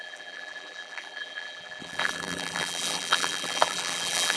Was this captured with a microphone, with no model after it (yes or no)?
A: no